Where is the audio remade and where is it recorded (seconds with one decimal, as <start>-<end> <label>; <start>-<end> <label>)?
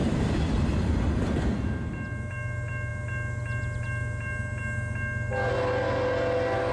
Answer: 0.0-0.7 remade; 0.7-6.7 recorded